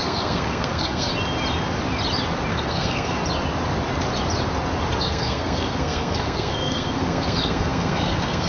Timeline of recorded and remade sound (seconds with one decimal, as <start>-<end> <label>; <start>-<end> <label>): 0.0-1.1 remade; 1.1-2.5 recorded; 2.5-3.2 remade; 3.2-5.0 recorded; 5.0-8.5 remade